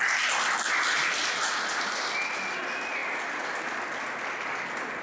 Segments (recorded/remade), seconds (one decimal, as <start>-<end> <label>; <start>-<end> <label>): 0.0-5.0 recorded